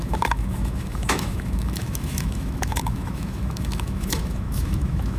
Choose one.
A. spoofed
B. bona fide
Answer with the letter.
A